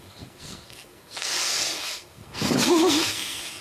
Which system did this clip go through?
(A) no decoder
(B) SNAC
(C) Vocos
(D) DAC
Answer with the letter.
B